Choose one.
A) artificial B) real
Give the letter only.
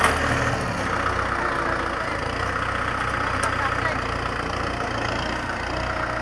B